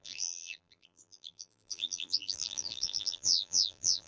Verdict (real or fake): fake